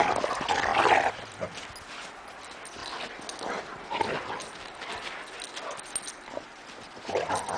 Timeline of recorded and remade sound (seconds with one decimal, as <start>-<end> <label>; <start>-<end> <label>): 0.0-7.6 recorded